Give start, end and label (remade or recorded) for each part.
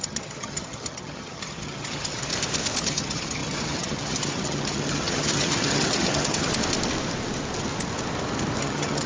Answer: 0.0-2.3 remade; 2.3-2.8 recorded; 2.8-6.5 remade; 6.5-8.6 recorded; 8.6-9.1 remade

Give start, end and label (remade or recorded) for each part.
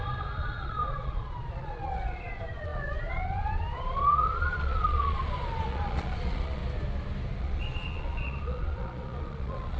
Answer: 0.0-6.6 remade; 6.6-7.4 recorded; 7.4-9.8 remade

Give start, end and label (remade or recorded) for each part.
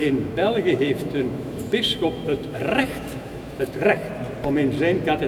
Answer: 0.0-4.0 remade; 4.0-5.3 recorded